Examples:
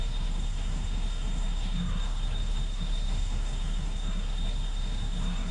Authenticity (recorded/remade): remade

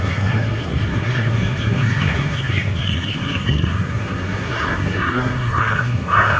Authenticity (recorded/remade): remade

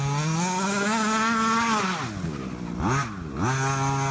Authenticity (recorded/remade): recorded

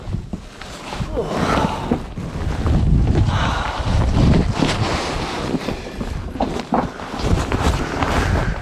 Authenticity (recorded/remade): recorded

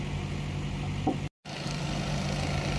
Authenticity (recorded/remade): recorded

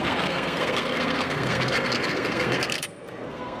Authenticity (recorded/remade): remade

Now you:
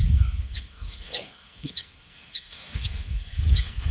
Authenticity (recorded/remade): remade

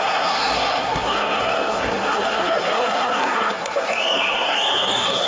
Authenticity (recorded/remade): remade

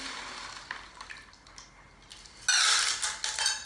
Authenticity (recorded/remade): recorded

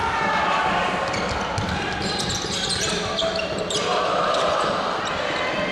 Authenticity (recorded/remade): recorded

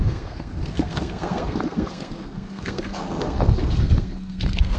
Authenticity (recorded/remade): remade